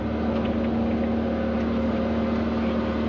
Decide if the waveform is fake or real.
real